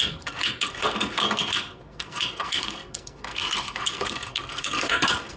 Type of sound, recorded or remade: remade